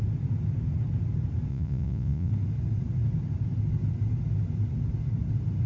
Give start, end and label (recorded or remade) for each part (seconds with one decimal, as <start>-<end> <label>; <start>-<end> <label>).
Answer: 0.0-1.5 recorded; 1.5-2.3 remade; 2.3-5.7 recorded